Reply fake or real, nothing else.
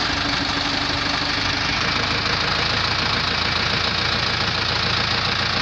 real